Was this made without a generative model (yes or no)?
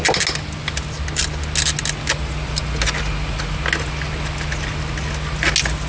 yes